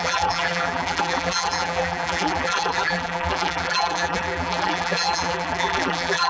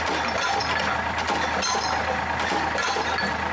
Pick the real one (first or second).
second